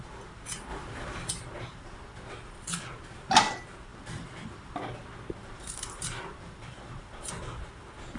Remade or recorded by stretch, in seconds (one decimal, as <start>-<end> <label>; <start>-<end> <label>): 0.0-3.9 recorded; 3.9-4.5 remade; 4.5-5.4 recorded; 5.4-7.3 remade; 7.3-8.2 recorded